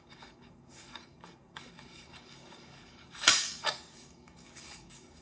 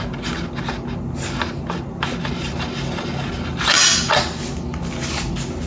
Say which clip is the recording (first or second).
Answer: second